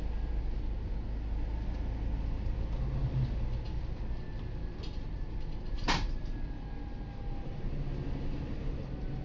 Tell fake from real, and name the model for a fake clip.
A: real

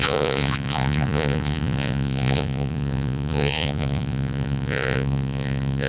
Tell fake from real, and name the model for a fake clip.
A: fake, vocoder, Vocos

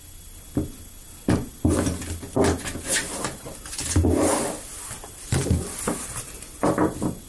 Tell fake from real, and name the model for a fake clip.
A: real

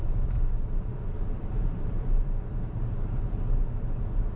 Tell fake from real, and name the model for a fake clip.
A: fake, vocoder, BigVGAN v2